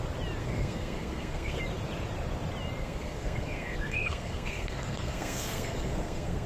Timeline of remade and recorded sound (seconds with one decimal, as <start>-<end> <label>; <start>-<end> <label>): 0.0-0.4 recorded; 0.4-1.6 remade; 1.6-2.8 recorded; 2.8-6.5 remade